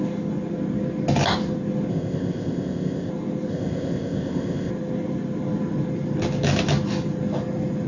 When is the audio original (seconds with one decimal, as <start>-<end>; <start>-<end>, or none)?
0.0-1.9; 3.1-3.5; 4.7-7.9